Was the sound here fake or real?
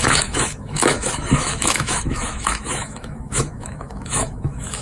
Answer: fake